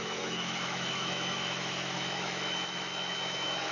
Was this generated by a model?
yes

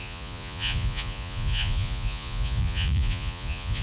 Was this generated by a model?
yes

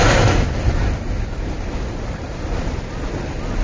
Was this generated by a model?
no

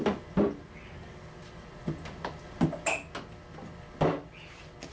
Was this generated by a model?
no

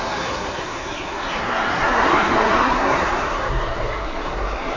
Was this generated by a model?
yes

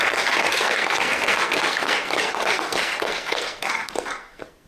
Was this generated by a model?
yes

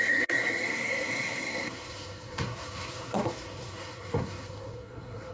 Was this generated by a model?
yes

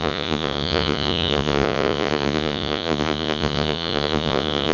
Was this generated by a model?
yes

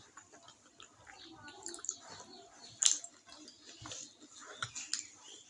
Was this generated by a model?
no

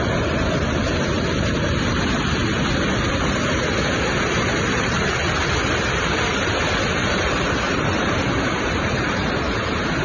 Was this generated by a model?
yes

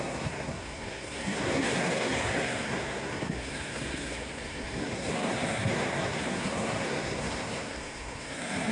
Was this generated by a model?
yes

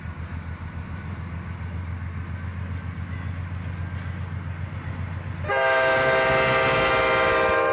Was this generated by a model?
no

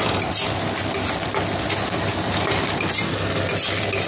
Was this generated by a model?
no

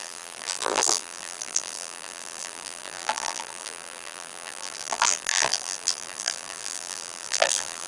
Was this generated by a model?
yes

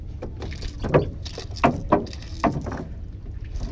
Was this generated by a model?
no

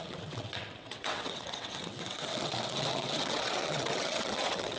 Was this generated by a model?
yes